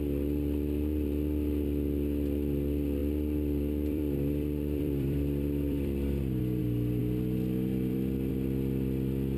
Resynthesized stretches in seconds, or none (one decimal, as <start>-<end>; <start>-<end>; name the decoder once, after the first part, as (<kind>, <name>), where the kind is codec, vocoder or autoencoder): 3.0-6.6 (vocoder, BigVGAN v2); 7.0-8.3